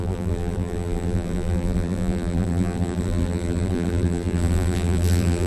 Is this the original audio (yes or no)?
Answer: no